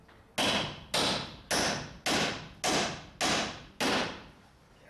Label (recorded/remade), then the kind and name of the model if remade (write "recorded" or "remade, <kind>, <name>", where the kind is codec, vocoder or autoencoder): recorded